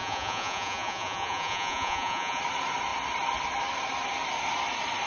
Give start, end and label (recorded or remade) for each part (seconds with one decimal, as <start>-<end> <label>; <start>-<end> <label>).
0.0-2.4 remade; 2.4-5.1 recorded